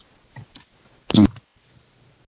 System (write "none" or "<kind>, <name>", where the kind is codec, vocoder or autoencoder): none